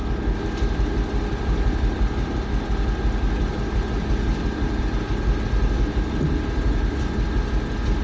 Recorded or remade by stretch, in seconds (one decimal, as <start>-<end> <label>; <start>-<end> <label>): 0.0-8.0 recorded